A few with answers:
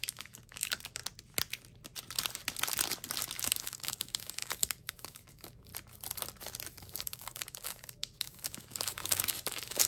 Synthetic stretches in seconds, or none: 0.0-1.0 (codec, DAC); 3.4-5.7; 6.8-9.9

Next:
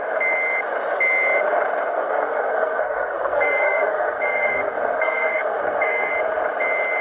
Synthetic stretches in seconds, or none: 1.9-6.1 (codec, SNAC)